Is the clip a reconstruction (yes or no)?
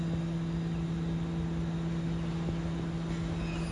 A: no